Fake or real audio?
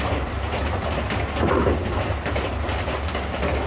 real